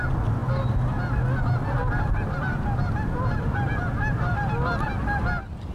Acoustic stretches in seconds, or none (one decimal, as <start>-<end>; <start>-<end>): 0.0-5.7